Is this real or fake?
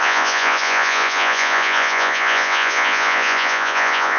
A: fake